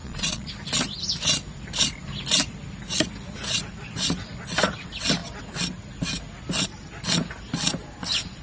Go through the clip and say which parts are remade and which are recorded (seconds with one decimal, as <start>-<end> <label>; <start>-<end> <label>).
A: 0.0-0.5 remade; 0.5-8.4 recorded